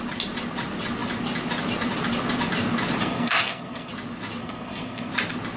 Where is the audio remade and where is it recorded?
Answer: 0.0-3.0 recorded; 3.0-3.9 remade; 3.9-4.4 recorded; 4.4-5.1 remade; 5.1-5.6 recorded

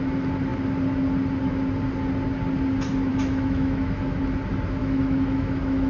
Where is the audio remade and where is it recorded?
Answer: 0.0-3.1 recorded; 3.1-4.2 remade; 4.2-4.8 recorded; 4.8-5.9 remade

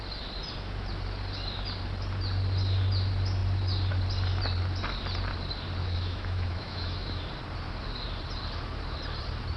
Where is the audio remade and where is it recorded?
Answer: 0.0-5.8 recorded; 5.8-7.2 remade; 7.2-9.6 recorded

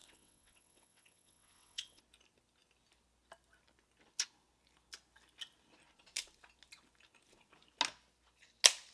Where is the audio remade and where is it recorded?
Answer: 0.0-2.0 remade; 2.0-8.9 recorded